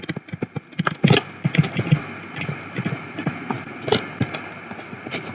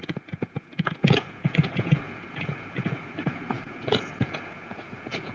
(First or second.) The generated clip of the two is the second